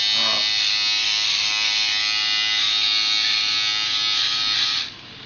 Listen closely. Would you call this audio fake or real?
real